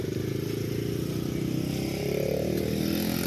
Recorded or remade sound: recorded